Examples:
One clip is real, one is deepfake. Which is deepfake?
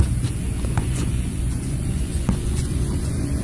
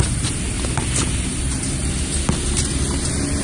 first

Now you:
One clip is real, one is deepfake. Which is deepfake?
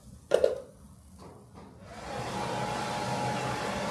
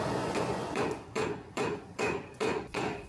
second